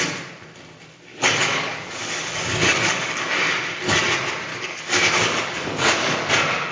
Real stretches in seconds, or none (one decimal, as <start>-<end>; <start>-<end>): 0.0-1.1; 3.3-4.5; 6.3-6.7